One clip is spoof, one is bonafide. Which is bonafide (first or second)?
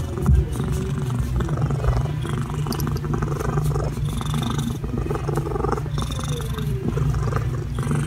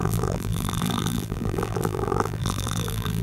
first